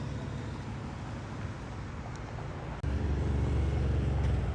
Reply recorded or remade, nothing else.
recorded